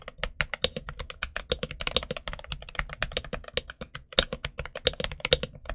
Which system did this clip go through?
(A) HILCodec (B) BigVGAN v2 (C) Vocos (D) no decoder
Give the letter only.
D